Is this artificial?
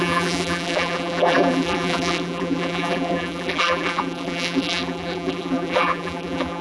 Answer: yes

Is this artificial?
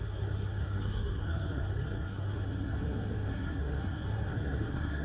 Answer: yes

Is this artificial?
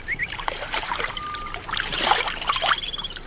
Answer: yes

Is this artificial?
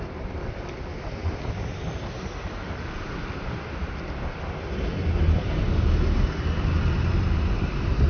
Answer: no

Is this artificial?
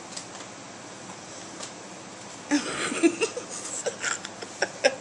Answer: no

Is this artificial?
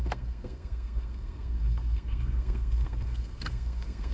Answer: yes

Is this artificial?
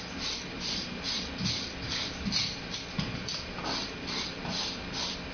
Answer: no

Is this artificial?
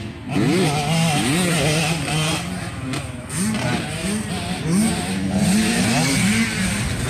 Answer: no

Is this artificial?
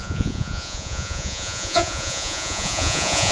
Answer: yes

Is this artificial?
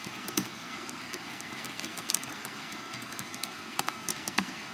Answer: yes